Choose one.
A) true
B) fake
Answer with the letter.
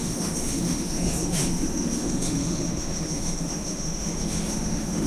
B